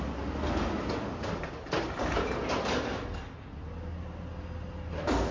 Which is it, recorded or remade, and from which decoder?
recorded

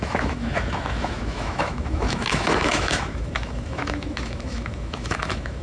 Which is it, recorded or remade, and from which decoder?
remade, autoencoder, DAC-VAE